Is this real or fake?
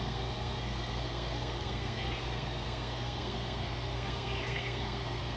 fake